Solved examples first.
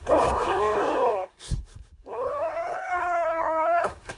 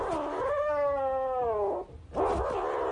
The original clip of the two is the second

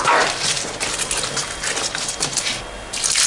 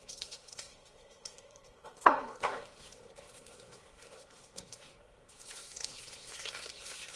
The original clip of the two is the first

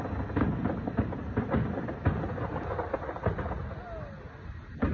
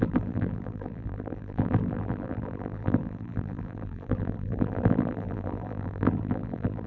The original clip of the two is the first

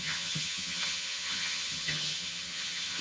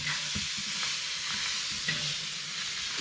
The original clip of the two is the second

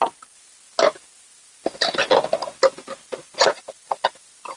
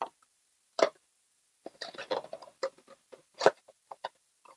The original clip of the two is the first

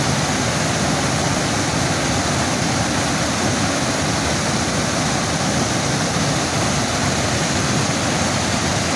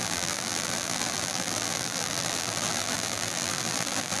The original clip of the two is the first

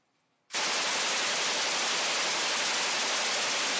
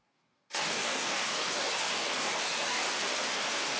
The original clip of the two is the first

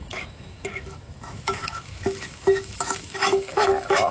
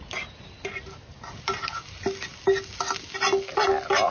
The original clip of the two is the second